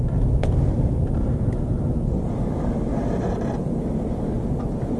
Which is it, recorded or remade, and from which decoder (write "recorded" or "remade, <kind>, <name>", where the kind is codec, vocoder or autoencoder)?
recorded